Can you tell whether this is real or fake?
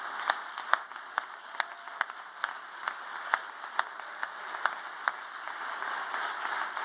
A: real